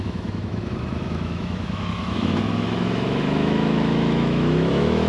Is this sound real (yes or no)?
no